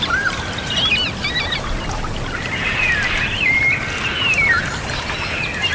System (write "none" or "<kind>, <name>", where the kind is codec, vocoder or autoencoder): none